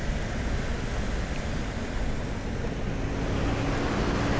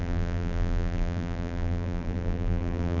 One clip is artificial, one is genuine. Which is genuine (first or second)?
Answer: first